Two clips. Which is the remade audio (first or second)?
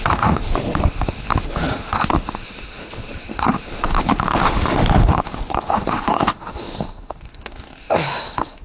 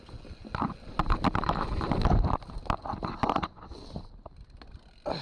first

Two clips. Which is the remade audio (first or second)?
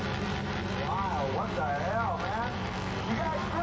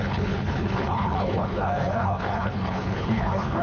second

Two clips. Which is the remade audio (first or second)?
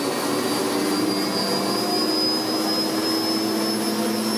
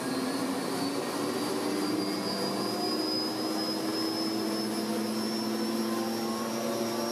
second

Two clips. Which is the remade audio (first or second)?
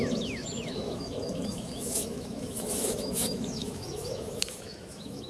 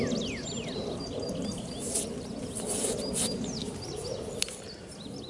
first